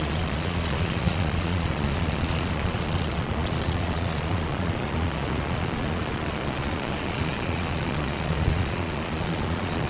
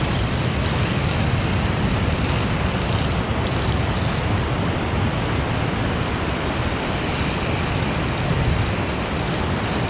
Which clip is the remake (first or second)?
first